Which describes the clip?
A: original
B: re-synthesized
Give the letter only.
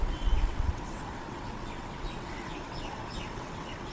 B